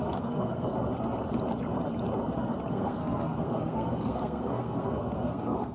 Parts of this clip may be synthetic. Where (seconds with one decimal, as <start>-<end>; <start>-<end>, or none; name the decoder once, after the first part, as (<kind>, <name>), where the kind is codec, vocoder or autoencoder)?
0.0-0.7 (codec, SNAC); 2.7-5.7